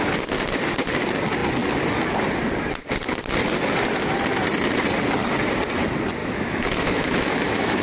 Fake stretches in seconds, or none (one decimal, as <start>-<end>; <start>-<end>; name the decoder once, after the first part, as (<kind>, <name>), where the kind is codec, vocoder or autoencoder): 6.2-7.8 (autoencoder, DAC-VAE)